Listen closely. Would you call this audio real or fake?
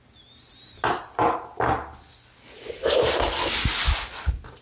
real